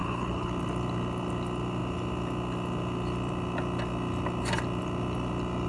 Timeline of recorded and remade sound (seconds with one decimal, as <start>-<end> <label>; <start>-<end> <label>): 0.0-0.5 remade; 0.5-5.7 recorded